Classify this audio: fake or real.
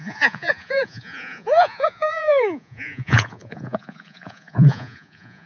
fake